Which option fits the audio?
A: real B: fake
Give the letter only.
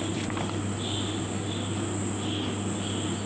A